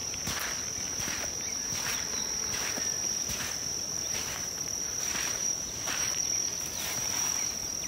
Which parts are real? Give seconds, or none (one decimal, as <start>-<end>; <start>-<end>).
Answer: 0.0-0.8